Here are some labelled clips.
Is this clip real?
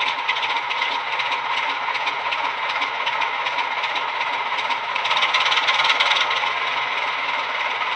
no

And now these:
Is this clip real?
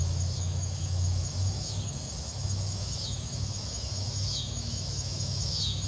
no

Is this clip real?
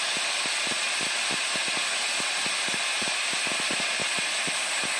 yes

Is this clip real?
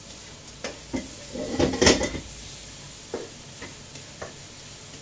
yes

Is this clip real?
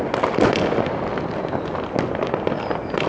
yes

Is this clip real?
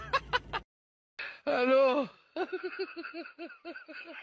yes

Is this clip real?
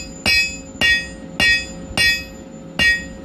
yes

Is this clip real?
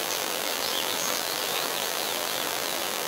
no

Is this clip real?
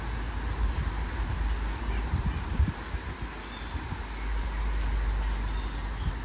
yes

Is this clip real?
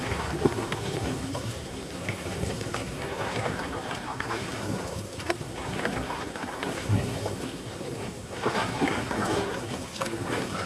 no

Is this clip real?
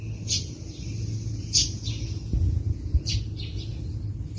yes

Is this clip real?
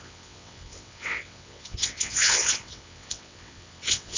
no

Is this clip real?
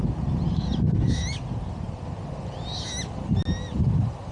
yes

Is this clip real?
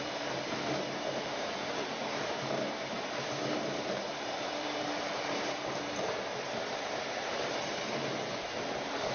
no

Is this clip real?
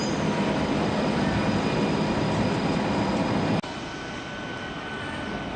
yes